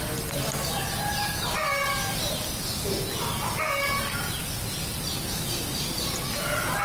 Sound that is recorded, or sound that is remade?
recorded